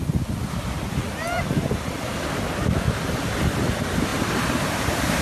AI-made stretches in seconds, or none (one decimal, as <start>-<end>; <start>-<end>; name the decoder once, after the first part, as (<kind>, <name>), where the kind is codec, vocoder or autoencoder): none